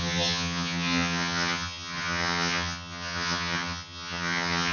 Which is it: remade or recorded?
remade